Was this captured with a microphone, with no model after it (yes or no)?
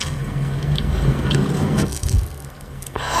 no